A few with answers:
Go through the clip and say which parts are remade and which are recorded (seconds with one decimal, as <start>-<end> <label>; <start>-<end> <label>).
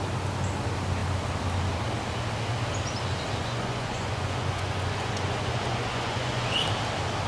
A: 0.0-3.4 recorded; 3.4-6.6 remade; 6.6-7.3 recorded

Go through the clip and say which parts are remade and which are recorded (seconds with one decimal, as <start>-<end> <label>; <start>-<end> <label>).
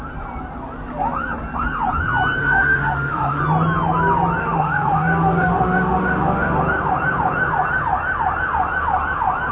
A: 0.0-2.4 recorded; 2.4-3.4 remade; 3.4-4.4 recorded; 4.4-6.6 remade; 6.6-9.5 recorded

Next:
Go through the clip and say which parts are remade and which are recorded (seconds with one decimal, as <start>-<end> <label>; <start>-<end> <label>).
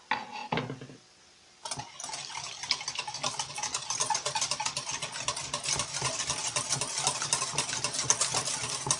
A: 0.0-9.0 recorded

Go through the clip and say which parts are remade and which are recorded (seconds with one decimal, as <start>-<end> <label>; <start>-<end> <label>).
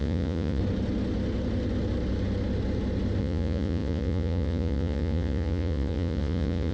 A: 0.0-0.6 remade; 0.6-3.2 recorded; 3.2-6.7 remade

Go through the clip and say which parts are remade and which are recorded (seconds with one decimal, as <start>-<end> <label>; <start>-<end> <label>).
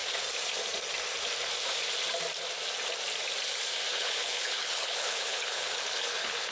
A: 0.0-3.9 recorded; 3.9-6.5 remade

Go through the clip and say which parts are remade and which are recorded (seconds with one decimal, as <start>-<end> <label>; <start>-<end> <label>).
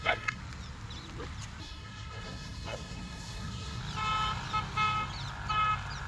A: 0.0-0.4 remade; 0.4-1.6 recorded; 1.6-3.8 remade; 3.8-6.1 recorded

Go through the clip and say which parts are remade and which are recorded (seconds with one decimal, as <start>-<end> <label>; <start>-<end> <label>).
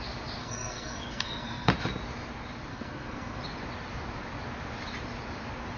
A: 0.0-0.4 recorded; 0.4-1.7 remade; 1.7-2.7 recorded; 2.7-3.4 remade; 3.4-5.8 recorded